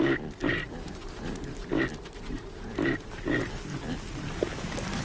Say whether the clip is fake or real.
real